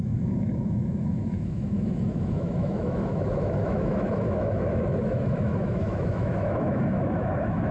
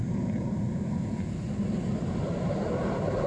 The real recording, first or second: second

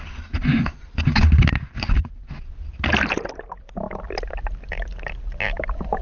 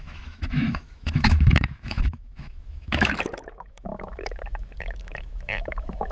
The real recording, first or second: first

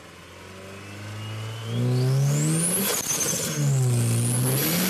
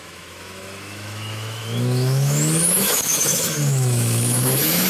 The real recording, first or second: first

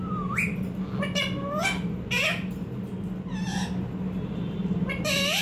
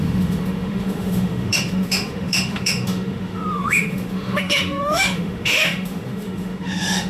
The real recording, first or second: first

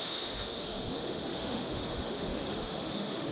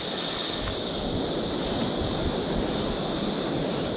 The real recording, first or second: second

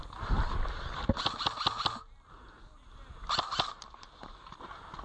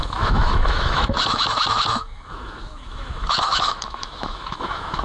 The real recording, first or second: first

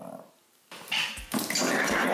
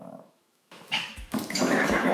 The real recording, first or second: first